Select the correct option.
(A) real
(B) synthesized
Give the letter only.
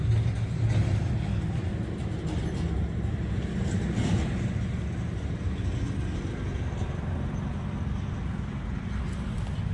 A